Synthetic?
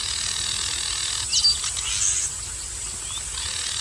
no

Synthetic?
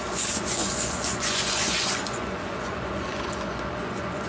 yes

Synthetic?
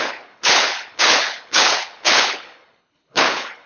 yes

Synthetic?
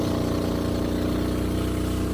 no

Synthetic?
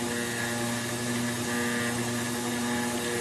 no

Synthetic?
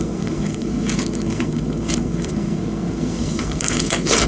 yes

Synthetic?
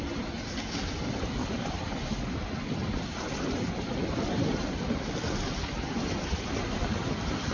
no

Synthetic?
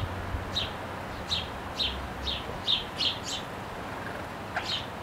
yes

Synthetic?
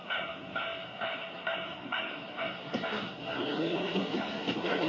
yes